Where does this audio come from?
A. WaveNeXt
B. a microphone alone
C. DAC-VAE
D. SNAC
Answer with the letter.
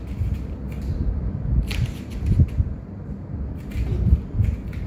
B